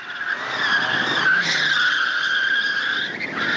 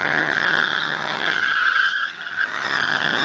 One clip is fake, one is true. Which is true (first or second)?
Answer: first